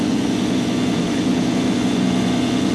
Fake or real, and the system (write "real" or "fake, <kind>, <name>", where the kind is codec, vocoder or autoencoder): fake, vocoder, Vocos